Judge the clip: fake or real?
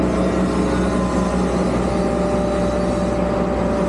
real